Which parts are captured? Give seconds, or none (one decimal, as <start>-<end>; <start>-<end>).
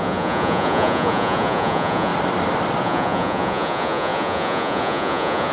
2.1-2.8